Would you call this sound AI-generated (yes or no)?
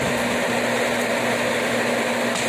no